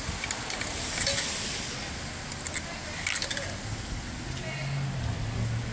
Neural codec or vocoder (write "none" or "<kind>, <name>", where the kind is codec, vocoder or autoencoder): none